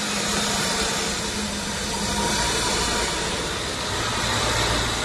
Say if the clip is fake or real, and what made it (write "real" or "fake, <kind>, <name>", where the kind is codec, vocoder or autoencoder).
real